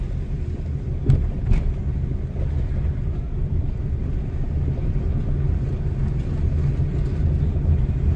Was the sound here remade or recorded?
recorded